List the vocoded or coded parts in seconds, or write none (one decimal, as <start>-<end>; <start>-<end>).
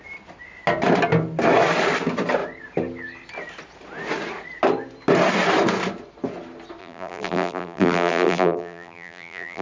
6.8-9.6